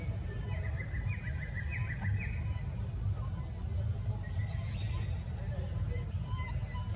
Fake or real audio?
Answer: real